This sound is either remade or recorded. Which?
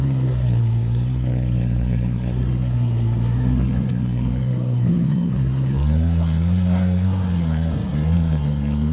remade